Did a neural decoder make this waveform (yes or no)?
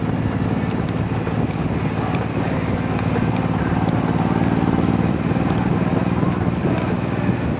no